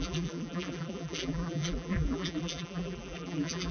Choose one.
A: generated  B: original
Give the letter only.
A